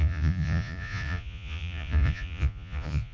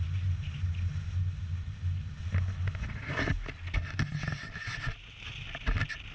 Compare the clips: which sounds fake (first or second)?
first